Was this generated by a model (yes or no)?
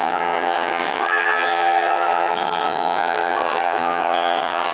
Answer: yes